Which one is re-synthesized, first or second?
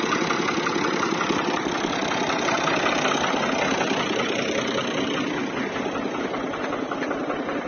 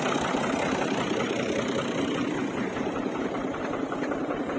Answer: second